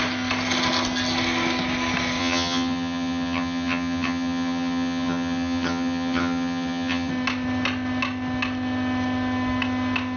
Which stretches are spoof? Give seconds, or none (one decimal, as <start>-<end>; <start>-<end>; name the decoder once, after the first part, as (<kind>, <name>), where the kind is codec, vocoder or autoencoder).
2.2-7.1 (vocoder, HiFi-GAN)